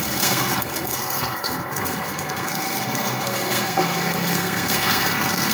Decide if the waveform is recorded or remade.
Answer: remade